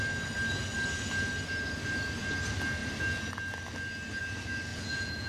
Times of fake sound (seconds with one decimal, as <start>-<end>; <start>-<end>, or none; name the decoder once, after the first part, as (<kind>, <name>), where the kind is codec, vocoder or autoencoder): 4.7-5.3 (vocoder, Vocos)

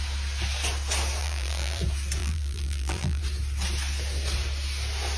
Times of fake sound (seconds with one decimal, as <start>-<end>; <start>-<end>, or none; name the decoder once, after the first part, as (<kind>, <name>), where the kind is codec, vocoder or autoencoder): 1.2-1.8 (vocoder, BigVGAN v2); 2.2-3.2